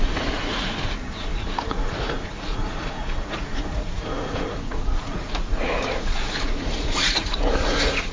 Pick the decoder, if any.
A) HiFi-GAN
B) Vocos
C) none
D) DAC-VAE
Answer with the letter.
B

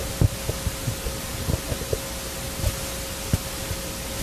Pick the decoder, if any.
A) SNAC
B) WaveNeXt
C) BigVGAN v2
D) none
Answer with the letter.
D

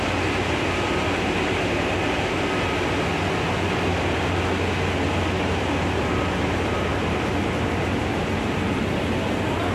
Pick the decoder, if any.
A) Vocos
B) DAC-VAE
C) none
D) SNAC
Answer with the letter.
C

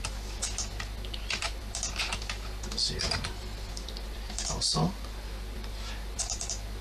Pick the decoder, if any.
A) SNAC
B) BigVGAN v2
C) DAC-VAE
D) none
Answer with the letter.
D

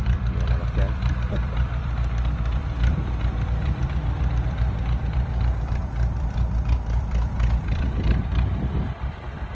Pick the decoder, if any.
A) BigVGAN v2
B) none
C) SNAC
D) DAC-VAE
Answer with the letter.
A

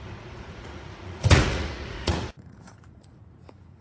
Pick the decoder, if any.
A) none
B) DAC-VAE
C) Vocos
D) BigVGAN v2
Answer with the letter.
C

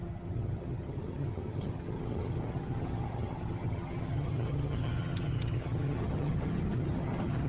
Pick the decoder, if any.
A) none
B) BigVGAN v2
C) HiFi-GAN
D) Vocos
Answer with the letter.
C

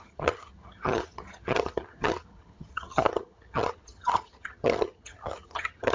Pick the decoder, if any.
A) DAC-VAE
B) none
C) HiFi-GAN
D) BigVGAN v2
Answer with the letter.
C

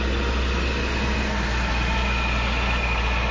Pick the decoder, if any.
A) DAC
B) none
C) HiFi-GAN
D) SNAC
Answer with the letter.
B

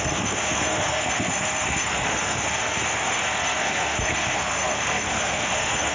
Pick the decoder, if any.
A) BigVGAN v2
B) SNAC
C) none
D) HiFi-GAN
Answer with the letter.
B